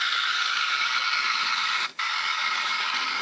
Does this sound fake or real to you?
fake